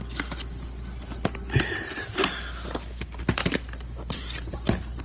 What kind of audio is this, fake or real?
real